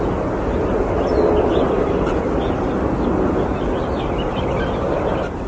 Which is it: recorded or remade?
recorded